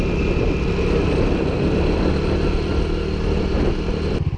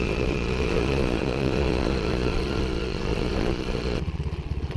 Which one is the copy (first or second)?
second